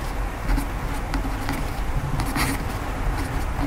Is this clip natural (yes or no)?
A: yes